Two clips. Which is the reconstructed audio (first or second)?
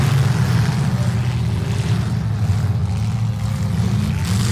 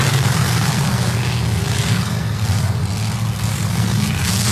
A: second